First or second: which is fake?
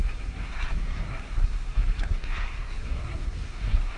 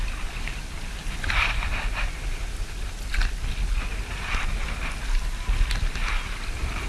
first